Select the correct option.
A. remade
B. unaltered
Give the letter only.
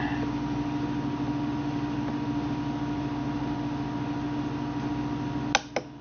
B